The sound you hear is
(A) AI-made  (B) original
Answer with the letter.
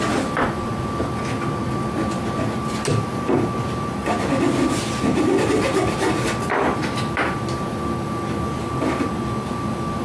B